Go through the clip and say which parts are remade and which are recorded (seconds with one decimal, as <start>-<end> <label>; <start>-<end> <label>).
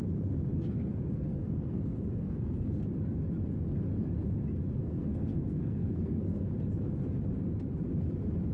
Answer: 0.0-0.5 recorded; 0.5-2.7 remade; 2.7-4.8 recorded; 4.8-6.5 remade; 6.5-8.5 recorded